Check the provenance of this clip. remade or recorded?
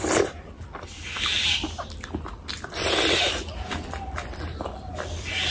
remade